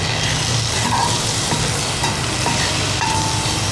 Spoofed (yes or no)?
no